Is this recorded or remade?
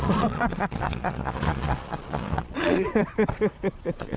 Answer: remade